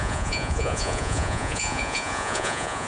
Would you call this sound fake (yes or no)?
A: yes